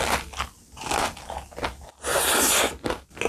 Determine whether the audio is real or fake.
real